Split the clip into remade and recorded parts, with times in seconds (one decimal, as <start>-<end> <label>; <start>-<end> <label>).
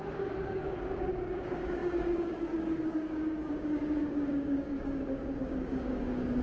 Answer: 0.0-6.4 remade